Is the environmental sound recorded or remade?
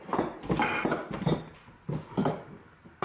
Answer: recorded